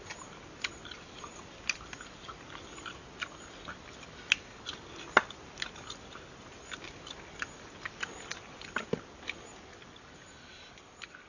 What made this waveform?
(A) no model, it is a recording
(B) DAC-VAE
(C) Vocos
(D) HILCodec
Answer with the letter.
A